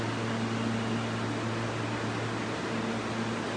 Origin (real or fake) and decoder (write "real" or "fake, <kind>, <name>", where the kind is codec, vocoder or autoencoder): real